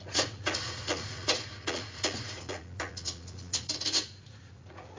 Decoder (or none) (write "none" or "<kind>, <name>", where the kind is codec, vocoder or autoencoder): vocoder, Vocos